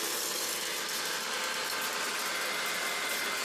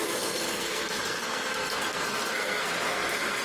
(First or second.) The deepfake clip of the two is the second